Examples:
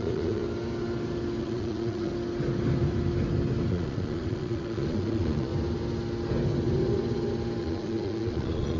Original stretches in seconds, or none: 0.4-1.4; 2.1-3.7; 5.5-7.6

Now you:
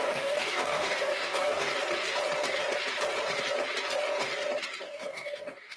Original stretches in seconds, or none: 1.7-4.8

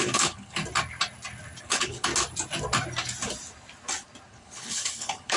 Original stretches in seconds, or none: 0.6-1.6; 2.1-4.3

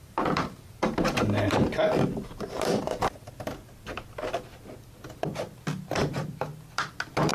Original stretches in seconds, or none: 3.3-7.3

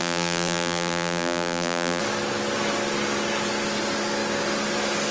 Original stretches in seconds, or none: 2.0-5.1

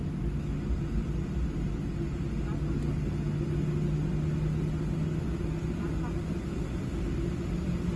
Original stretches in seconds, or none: 0.0-8.0

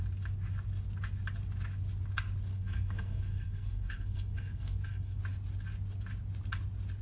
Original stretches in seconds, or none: 0.0-2.5; 5.2-7.0